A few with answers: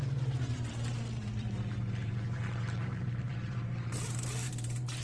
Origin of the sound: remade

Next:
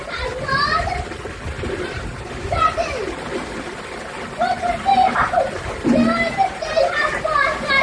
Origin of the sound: recorded